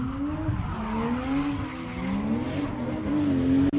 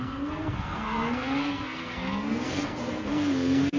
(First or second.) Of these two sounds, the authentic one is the first